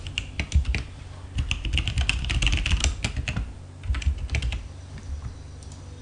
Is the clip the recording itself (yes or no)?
yes